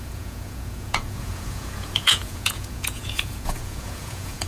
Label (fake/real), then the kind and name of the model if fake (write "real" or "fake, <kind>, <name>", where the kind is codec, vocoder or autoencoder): fake, vocoder, Vocos